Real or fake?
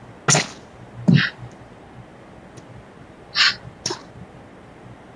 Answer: real